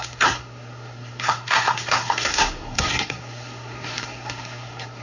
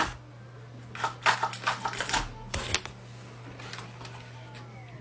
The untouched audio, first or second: second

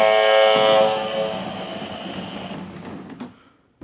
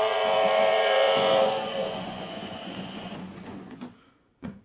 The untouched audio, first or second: first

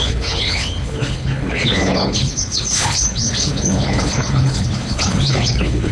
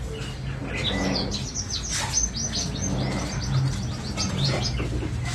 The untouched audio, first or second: second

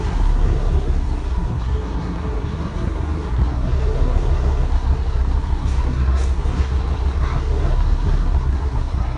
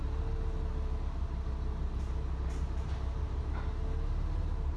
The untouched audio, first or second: second